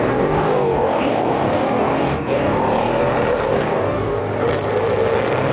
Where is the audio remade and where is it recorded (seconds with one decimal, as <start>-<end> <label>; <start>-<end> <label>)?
0.0-2.6 remade; 2.6-3.5 recorded; 3.5-4.2 remade; 4.2-5.5 recorded